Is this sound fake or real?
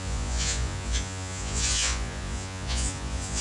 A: fake